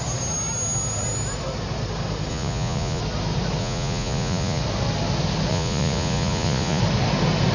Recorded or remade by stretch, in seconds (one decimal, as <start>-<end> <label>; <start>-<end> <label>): 0.0-2.3 recorded; 2.3-3.0 remade; 3.0-3.6 recorded; 3.6-4.6 remade; 4.6-5.5 recorded; 5.5-6.8 remade; 6.8-7.5 recorded

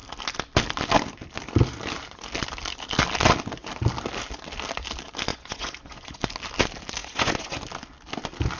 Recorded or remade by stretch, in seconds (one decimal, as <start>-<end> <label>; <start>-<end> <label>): 0.0-5.3 recorded; 5.3-6.2 remade; 6.2-7.0 recorded; 7.0-7.6 remade; 7.6-8.6 recorded

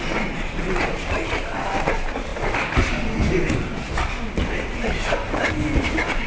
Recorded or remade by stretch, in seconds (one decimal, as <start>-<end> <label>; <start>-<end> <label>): 0.0-6.3 recorded

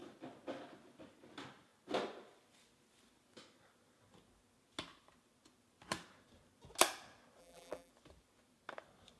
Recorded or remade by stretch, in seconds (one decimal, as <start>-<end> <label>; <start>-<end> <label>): 0.0-7.4 recorded; 7.4-7.9 remade; 7.9-9.2 recorded

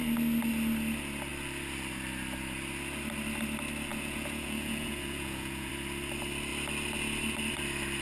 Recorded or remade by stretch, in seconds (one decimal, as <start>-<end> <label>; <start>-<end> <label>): 0.0-3.9 recorded; 3.9-5.7 remade; 5.7-8.0 recorded

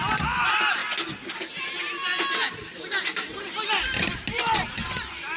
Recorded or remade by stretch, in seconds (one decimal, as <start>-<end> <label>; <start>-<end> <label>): 0.0-5.4 recorded

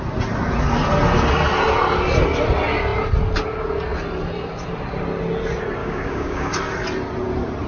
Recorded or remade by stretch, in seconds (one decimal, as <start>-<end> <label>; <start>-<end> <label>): 0.0-5.8 recorded; 5.8-6.5 remade; 6.5-7.7 recorded

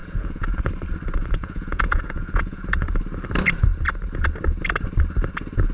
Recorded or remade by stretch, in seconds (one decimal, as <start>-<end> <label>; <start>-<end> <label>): 0.0-0.6 remade; 0.6-1.2 recorded; 1.2-2.7 remade; 2.7-5.7 recorded